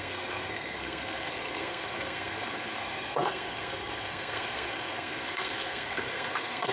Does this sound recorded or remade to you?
remade